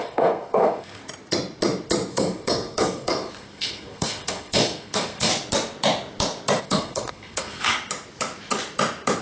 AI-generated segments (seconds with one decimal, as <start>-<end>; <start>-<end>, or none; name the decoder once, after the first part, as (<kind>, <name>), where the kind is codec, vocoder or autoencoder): 0.0-1.0 (codec, SNAC); 2.1-5.3; 6.6-7.7